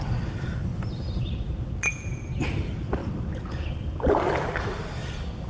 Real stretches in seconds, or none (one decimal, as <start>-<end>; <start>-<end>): 0.0-5.5

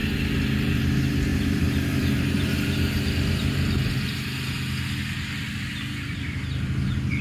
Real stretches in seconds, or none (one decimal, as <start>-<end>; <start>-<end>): 0.8-1.3; 3.7-7.2

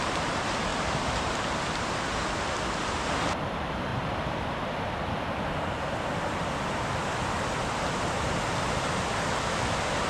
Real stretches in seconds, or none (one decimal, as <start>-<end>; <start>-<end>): 0.0-0.7; 1.6-3.9; 4.8-10.1

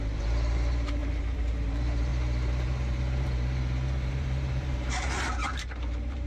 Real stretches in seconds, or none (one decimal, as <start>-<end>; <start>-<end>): 2.1-4.1

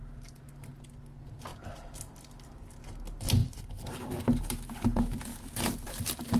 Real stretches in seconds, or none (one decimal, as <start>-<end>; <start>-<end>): 0.0-1.5; 2.6-3.4; 4.1-5.3; 6.0-6.4